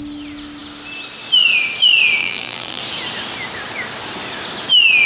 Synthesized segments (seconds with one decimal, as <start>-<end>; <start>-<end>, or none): 2.2-2.8